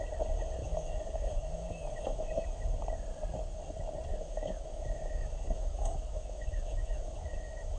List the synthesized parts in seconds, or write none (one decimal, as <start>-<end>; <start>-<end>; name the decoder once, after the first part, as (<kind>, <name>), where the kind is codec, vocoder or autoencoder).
0.6-2.5 (autoencoder, DAC-VAE); 4.1-7.8